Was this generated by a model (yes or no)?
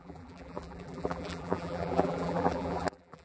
yes